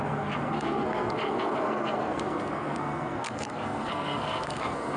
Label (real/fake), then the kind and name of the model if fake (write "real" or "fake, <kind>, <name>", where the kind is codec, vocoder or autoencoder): fake, codec, SNAC